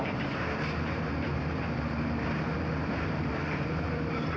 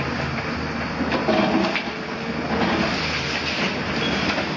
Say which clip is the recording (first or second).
second